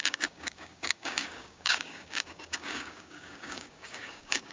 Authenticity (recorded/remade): remade